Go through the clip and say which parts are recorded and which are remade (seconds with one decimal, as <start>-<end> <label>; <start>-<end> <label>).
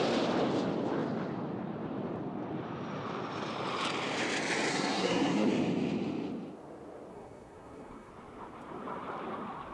0.0-4.7 recorded; 4.7-5.5 remade; 5.5-7.1 recorded; 7.1-8.1 remade; 8.1-9.7 recorded